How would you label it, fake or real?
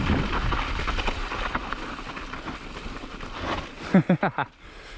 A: real